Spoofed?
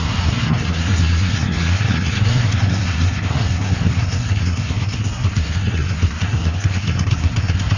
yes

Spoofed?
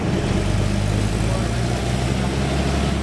no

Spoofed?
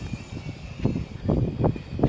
no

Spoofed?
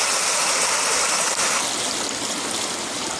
no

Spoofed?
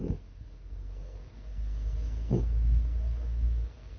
yes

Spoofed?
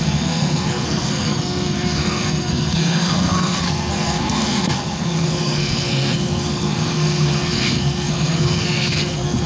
yes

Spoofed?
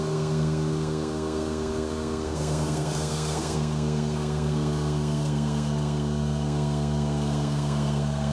yes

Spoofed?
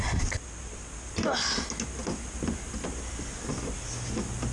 no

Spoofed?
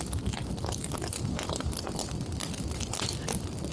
no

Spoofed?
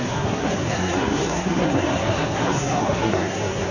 yes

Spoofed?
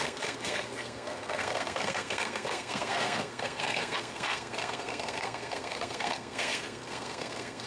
yes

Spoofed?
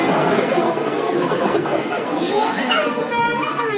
yes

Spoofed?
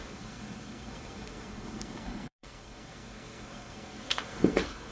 yes